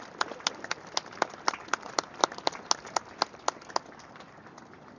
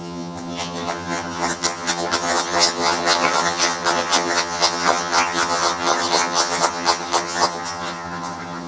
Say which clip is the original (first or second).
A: first